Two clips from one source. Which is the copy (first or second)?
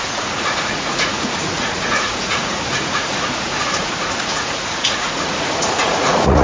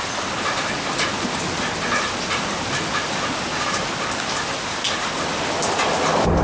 first